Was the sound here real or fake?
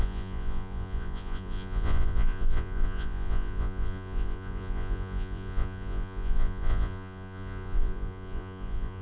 fake